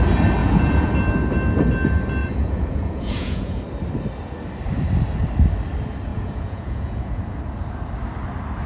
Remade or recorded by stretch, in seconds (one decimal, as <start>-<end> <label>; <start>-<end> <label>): 0.0-0.4 recorded; 0.4-0.9 remade; 0.9-2.2 recorded; 2.2-3.6 remade; 3.6-6.1 recorded; 6.1-7.2 remade; 7.2-8.7 recorded